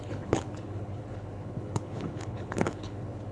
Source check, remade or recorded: remade